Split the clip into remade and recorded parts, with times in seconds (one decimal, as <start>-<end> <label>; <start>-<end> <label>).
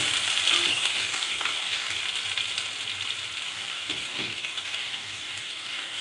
0.0-0.7 recorded; 0.7-2.0 remade; 2.0-3.5 recorded; 3.5-6.0 remade